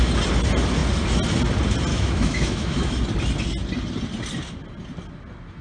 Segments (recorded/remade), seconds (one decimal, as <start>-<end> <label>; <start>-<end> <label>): 0.0-1.9 recorded; 1.9-2.9 remade; 2.9-5.6 recorded